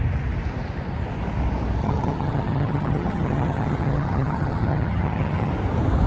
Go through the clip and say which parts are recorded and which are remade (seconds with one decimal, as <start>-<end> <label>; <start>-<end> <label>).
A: 0.0-1.8 recorded; 1.8-5.5 remade; 5.5-6.1 recorded